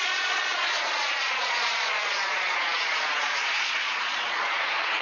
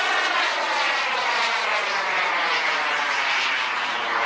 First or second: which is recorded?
second